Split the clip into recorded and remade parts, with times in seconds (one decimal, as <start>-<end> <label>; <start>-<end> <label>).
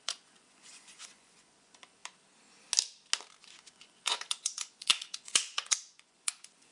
0.0-2.0 remade; 2.0-3.7 recorded; 3.7-6.7 remade